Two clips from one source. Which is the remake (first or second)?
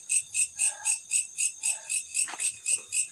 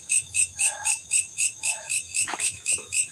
second